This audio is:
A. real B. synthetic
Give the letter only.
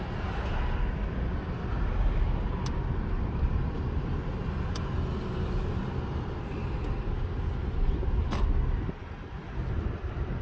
A